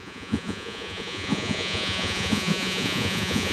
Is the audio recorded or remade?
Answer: remade